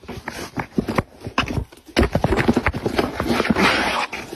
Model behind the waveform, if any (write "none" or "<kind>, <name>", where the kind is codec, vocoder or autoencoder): none